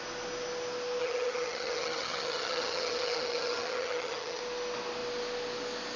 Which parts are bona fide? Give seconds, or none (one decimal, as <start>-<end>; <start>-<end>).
0.0-1.0; 4.4-6.0